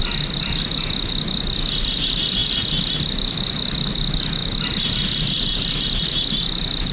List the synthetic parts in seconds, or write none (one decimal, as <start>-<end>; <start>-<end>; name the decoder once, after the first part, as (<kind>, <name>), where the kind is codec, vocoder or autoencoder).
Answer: none